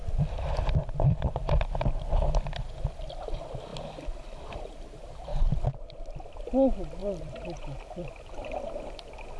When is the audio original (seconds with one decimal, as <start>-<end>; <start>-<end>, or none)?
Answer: 0.0-7.0; 8.7-9.4